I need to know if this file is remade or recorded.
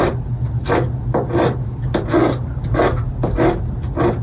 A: recorded